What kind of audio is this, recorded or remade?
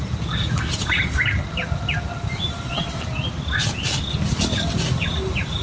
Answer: recorded